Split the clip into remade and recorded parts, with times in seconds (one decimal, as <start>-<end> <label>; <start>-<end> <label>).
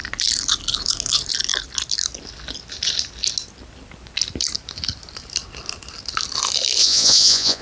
0.0-6.8 recorded; 6.8-7.6 remade